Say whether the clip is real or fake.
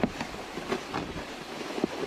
real